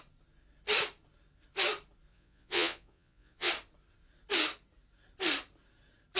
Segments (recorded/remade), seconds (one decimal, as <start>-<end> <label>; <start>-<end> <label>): 0.0-2.1 recorded; 2.1-3.5 remade; 3.5-6.2 recorded